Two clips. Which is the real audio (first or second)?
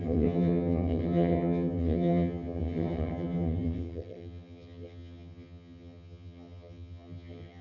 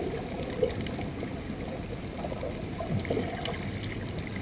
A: second